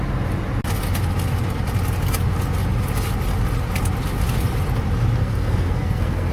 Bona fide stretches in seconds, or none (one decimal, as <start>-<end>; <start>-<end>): 0.0-5.2

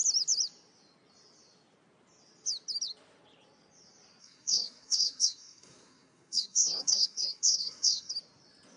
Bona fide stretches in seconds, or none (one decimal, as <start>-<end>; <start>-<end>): 0.0-4.2; 8.1-8.8

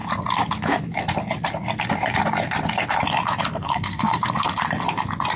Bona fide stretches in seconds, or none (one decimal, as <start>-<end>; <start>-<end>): 0.0-3.6; 4.2-5.4

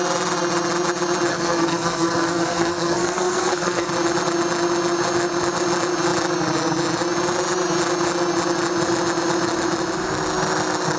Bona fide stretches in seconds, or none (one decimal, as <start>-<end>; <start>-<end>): 0.0-1.3; 3.9-11.0

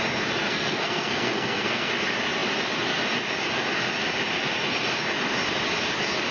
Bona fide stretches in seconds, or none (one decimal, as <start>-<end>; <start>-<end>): 0.0-0.4; 1.9-6.3

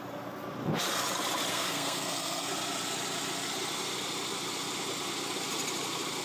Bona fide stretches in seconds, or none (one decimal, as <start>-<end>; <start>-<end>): 0.0-1.5; 2.5-6.2